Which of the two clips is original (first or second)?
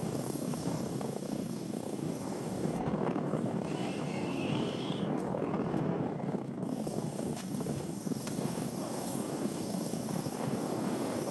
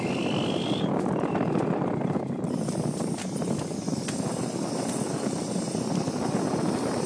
second